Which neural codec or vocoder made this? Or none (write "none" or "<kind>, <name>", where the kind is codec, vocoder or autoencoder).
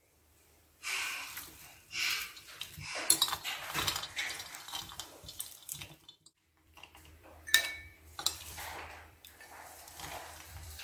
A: vocoder, BigVGAN v2